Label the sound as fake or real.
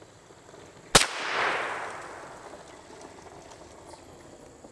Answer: real